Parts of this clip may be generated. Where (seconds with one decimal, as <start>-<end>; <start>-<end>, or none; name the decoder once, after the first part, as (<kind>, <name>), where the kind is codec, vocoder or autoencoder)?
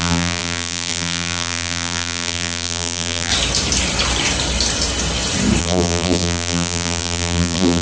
0.0-3.3 (vocoder, BigVGAN v2); 5.6-7.8